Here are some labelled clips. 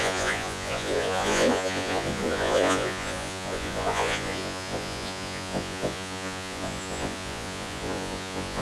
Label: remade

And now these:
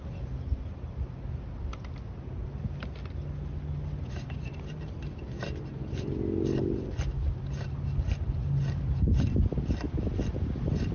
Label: recorded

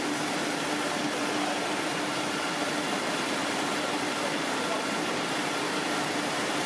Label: recorded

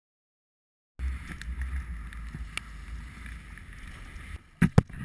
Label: recorded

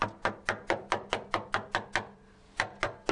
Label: recorded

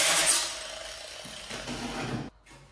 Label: recorded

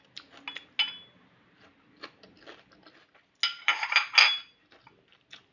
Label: recorded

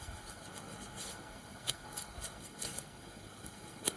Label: remade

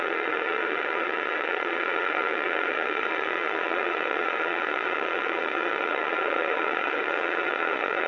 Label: remade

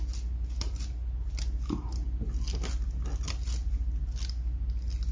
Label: recorded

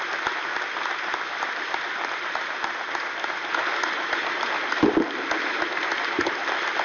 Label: recorded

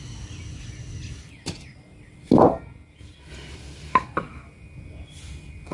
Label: recorded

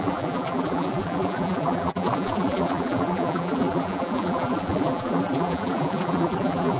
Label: remade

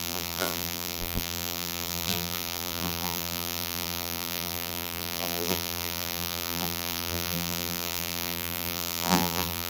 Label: remade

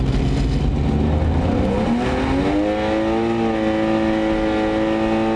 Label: recorded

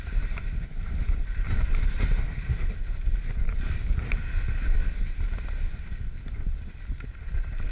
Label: recorded